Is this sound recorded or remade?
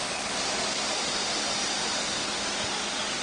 recorded